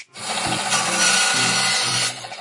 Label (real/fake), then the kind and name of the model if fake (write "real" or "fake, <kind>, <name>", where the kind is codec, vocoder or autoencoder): fake, vocoder, Vocos